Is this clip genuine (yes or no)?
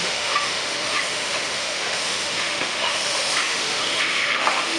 no